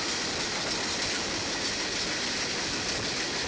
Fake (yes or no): no